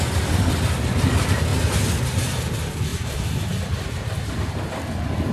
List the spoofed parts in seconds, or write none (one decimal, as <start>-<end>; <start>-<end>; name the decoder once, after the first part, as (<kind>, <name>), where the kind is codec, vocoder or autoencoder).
2.9-4.6 (vocoder, BigVGAN v2)